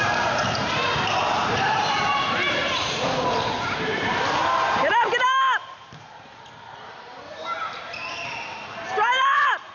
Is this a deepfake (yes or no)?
yes